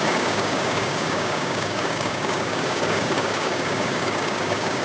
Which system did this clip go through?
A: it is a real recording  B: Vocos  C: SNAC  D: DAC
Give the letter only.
D